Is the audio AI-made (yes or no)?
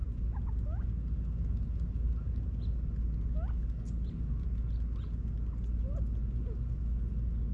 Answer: no